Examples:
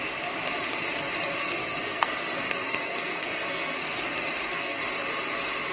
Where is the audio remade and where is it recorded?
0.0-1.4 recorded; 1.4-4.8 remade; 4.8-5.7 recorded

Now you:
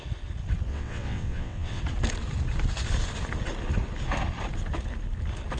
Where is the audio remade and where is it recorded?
0.0-0.7 recorded; 0.7-1.8 remade; 1.8-5.6 recorded